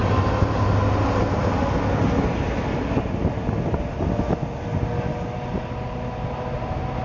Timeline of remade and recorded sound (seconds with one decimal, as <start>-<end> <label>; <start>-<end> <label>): 0.0-7.0 recorded